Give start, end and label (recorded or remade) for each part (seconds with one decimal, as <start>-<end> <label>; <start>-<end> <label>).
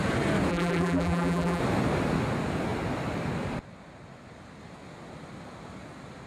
0.0-0.5 recorded; 0.5-1.6 remade; 1.6-6.3 recorded